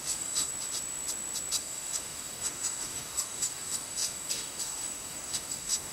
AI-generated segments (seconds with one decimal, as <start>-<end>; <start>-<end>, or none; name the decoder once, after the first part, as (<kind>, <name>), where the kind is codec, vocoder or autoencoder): 0.0-0.5 (codec, DAC); 1.6-5.9

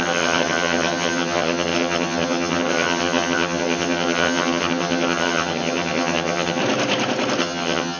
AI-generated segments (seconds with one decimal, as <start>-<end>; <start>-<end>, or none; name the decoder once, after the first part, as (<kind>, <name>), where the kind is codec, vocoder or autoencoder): 0.0-6.6 (vocoder, HiFi-GAN); 7.4-8.0

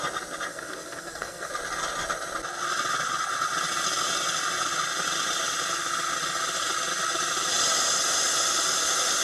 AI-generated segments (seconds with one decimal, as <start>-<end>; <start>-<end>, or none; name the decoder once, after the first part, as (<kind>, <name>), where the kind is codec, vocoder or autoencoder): 0.5-1.5 (codec, SNAC)

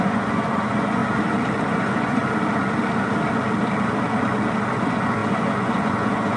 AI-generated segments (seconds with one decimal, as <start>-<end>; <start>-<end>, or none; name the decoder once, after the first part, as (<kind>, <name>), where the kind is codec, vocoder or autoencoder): 0.0-1.0 (vocoder, Vocos); 1.6-2.2; 4.7-6.4

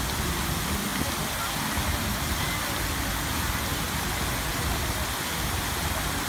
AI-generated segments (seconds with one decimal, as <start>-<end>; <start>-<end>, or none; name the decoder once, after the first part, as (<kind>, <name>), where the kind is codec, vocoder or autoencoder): none

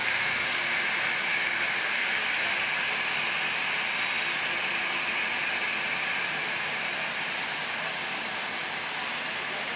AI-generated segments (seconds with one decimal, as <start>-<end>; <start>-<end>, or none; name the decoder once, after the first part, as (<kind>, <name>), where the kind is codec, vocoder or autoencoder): 0.0-0.7 (codec, DAC); 1.2-2.4

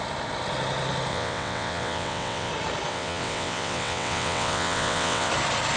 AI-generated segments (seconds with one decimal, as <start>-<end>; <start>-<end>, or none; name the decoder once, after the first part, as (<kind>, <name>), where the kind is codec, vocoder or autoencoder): 1.1-2.5 (vocoder, WaveNeXt); 2.9-5.3

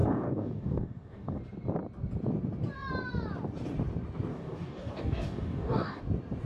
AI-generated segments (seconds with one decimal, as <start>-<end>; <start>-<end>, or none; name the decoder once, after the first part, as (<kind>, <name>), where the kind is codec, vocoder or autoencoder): 0.0-1.4 (codec, DAC); 4.3-6.0